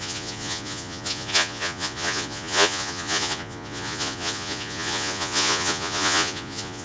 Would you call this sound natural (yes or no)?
no